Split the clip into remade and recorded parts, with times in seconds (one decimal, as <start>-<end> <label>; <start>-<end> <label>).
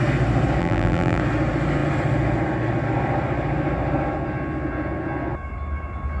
0.0-0.6 recorded; 0.6-1.2 remade; 1.2-6.2 recorded